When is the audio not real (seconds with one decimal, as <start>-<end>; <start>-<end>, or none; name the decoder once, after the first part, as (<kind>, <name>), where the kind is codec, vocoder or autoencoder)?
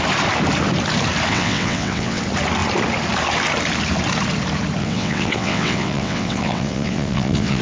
1.3-2.2 (vocoder, WaveNeXt); 4.8-7.6